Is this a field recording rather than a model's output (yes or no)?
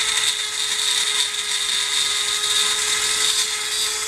yes